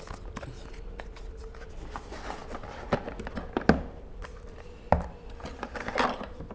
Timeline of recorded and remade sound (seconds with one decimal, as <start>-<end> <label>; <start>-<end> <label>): 0.0-6.5 recorded